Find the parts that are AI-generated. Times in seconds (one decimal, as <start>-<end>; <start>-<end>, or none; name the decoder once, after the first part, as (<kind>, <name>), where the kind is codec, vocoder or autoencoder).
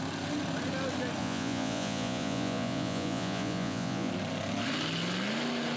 1.2-4.1 (vocoder, Vocos)